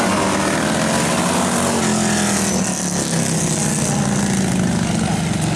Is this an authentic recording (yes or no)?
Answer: yes